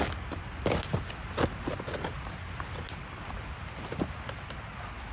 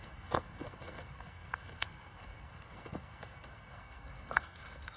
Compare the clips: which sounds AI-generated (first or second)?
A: second